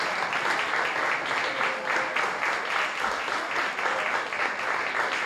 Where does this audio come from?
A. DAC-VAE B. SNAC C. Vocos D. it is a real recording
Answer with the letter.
D